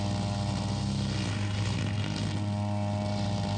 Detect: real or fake real